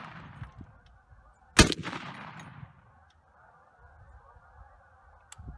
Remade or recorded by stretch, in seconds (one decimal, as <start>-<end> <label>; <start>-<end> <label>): 0.0-5.6 recorded

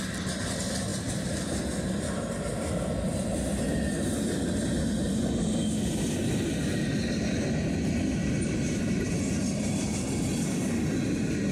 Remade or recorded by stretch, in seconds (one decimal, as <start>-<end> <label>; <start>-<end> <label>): 0.0-8.2 recorded; 8.2-9.1 remade; 9.1-11.5 recorded

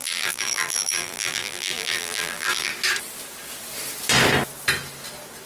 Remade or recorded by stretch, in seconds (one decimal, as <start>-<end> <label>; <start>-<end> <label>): 0.0-2.7 remade; 2.7-5.5 recorded

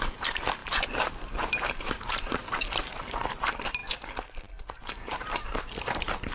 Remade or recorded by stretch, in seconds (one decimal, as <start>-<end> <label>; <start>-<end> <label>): 0.0-3.8 remade; 3.8-4.8 recorded; 4.8-6.3 remade

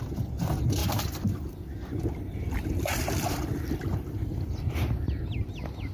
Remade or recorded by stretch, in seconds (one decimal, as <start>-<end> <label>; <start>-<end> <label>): 0.0-0.8 recorded; 0.8-2.4 remade; 2.4-2.9 recorded; 2.9-5.2 remade; 5.2-5.9 recorded

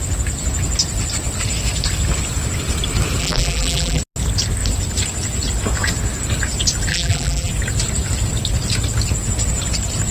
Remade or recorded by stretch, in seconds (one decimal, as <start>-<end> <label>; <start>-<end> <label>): 0.0-3.2 recorded; 3.2-4.0 remade; 4.0-6.9 recorded; 6.9-7.5 remade; 7.5-10.1 recorded